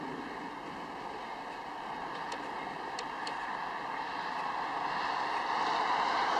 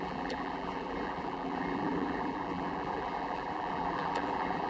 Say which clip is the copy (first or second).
second